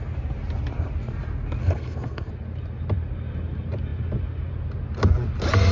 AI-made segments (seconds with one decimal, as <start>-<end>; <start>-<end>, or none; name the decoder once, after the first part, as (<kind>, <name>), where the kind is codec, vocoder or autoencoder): 1.6-2.3 (codec, SNAC)